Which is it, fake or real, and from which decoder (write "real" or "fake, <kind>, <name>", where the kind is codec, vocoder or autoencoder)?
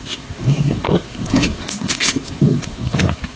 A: fake, codec, SNAC